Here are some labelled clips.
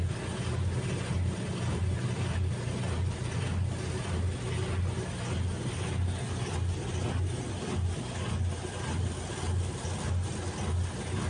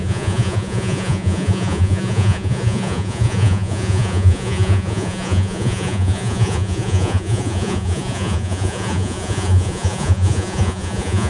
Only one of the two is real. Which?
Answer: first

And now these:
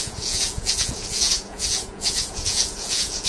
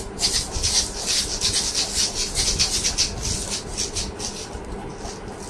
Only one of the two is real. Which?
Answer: second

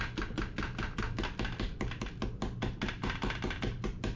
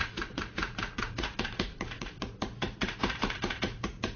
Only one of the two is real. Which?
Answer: first